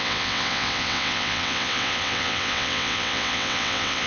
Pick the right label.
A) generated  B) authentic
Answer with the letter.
A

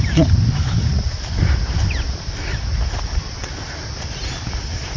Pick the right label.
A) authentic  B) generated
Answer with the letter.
A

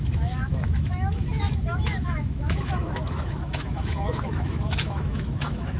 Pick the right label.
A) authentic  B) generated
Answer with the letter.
B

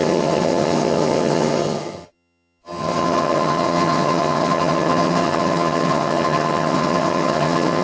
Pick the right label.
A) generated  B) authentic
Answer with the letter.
A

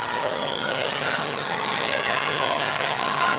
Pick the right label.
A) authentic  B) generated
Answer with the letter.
B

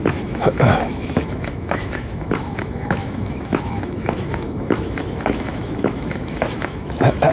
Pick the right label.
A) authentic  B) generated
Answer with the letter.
B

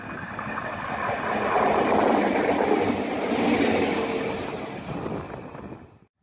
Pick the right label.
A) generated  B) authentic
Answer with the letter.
B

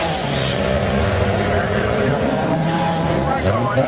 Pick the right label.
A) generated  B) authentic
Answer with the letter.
A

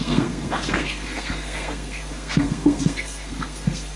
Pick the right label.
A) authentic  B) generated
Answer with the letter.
B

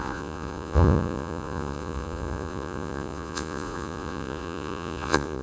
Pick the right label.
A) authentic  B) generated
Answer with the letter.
B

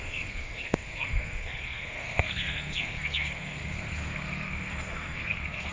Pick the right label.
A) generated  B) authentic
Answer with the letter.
A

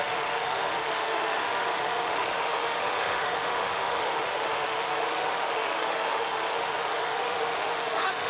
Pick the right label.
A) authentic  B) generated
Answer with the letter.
B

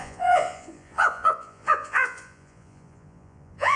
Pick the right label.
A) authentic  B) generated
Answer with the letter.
B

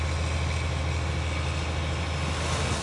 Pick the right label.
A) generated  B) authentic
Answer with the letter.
B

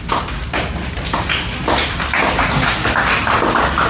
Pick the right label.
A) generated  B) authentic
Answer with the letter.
B